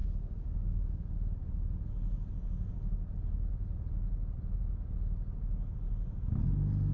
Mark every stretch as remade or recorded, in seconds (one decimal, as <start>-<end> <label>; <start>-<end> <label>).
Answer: 0.0-0.8 remade; 0.8-6.9 recorded

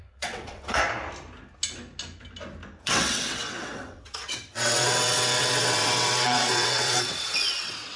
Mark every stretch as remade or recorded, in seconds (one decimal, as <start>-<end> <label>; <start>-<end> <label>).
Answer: 0.0-0.8 remade; 0.8-2.8 recorded; 2.8-8.0 remade

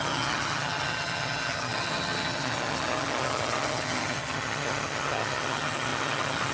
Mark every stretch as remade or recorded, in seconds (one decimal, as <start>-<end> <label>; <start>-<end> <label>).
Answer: 0.0-6.5 remade

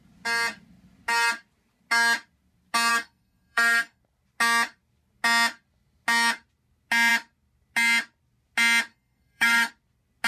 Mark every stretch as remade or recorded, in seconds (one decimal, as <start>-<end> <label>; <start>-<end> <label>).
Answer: 0.0-2.9 recorded; 2.9-4.0 remade; 4.0-8.9 recorded; 8.9-9.7 remade; 9.7-10.3 recorded

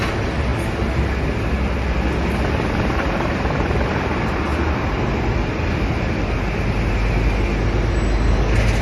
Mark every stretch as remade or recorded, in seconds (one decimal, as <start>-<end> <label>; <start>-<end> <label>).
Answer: 0.0-8.8 recorded

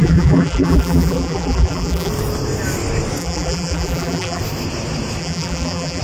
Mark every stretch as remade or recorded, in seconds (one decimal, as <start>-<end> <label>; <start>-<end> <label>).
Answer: 0.0-2.1 remade; 2.1-3.2 recorded; 3.2-4.4 remade; 4.4-5.2 recorded; 5.2-6.0 remade